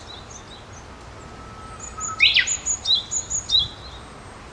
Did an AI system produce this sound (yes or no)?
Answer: no